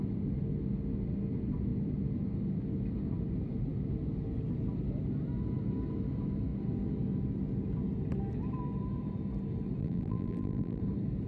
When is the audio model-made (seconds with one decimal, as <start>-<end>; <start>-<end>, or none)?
9.8-10.8